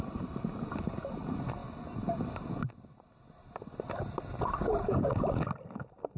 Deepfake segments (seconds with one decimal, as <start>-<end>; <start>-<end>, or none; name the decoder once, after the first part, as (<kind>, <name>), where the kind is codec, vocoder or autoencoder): none